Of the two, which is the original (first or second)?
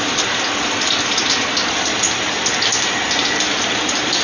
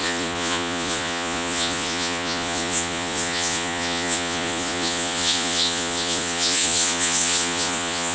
first